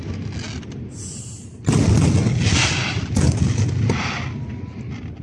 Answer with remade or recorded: recorded